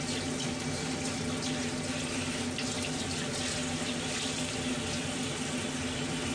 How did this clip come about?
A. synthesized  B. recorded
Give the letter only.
B